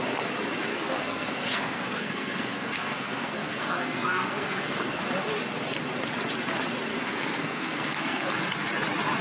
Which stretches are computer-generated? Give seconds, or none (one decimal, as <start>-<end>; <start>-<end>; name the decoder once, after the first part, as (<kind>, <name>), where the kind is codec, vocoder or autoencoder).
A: 0.7-5.0 (codec, SNAC); 6.9-8.3